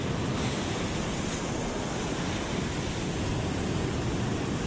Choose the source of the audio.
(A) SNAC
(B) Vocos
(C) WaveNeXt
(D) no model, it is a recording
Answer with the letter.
D